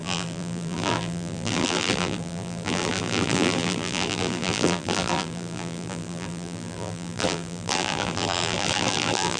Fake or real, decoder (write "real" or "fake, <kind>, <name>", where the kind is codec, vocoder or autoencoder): fake, vocoder, BigVGAN v2